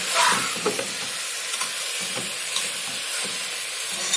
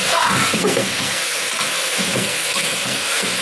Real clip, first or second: first